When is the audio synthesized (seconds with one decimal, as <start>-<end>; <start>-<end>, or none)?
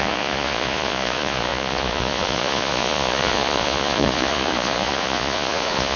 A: 0.0-6.0